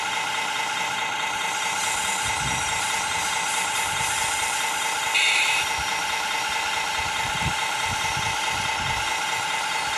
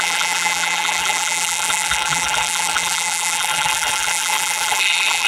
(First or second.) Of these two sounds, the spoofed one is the second